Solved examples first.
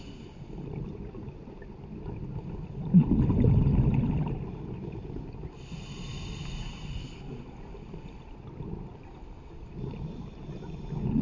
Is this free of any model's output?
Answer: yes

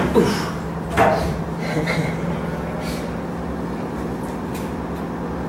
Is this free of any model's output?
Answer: yes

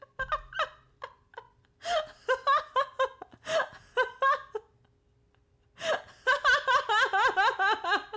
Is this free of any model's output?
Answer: yes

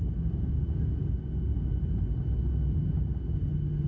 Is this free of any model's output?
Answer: yes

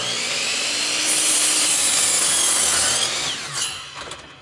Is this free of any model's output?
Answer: yes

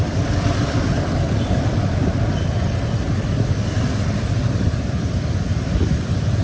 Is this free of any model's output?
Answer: no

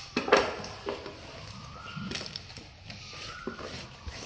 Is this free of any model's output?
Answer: yes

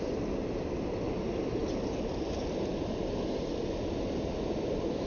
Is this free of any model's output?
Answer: yes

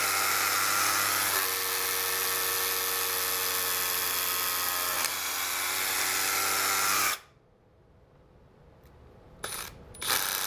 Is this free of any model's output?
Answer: yes